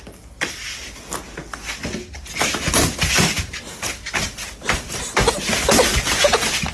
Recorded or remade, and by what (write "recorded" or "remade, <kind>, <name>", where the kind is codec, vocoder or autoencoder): recorded